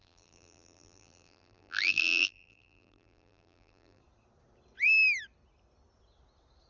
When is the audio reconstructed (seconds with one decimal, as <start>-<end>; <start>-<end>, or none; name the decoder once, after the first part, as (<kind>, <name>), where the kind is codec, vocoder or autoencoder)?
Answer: 0.0-4.0 (vocoder, BigVGAN v2)